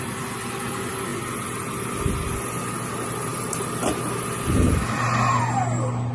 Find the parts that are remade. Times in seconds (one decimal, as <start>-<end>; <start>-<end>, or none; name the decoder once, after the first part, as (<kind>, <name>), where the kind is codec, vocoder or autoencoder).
none